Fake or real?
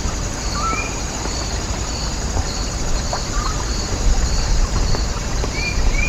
fake